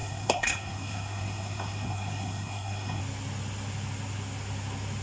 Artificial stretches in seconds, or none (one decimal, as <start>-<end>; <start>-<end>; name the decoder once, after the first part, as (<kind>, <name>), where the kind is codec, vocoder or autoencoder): 0.0-3.0 (codec, SNAC)